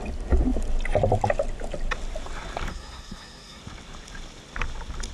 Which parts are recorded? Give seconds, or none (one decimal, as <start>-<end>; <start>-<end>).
0.0-2.7; 3.6-5.1